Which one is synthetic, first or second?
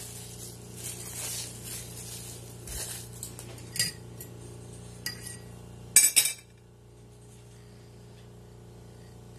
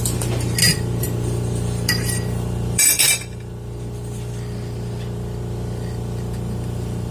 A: second